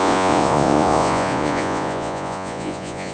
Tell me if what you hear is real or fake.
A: fake